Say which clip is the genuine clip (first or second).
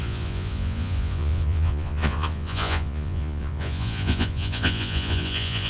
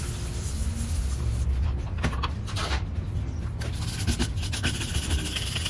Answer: second